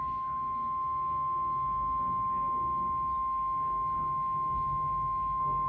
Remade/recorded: recorded